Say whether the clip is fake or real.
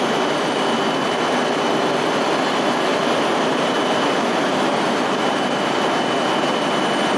fake